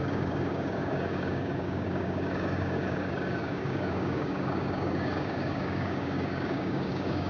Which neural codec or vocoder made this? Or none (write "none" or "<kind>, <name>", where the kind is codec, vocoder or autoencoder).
codec, DAC